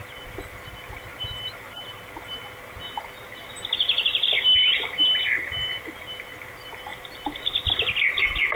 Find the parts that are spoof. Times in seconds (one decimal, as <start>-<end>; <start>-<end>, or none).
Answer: none